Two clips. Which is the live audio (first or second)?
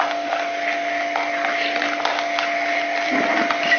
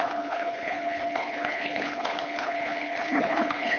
first